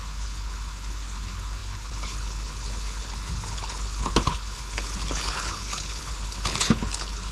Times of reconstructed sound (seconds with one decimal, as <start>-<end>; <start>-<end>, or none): 0.0-7.3